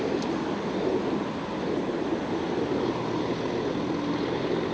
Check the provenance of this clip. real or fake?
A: real